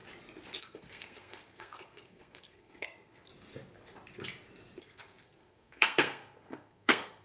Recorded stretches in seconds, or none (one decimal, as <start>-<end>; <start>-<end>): 0.0-0.6; 3.3-4.8